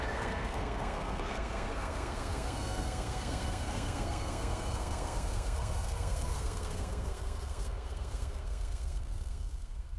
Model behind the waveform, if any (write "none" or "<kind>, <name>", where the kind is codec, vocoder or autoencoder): codec, SNAC